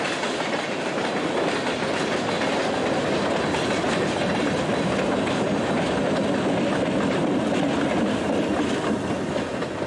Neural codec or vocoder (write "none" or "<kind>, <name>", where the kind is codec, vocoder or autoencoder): none